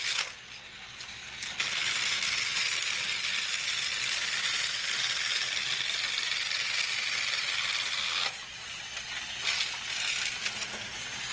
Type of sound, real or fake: real